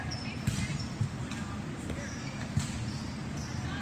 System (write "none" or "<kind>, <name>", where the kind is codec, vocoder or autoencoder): none